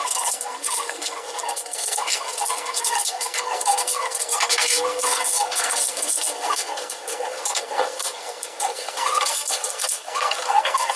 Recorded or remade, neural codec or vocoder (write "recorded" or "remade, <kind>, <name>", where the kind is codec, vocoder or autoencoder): remade, codec, SNAC